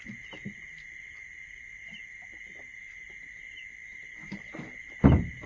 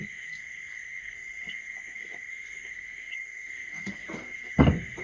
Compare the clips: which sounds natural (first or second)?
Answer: first